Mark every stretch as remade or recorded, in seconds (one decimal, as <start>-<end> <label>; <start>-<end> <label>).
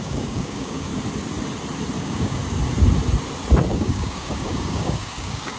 0.0-0.9 remade; 0.9-2.0 recorded; 2.0-2.4 remade; 2.4-3.7 recorded; 3.7-5.6 remade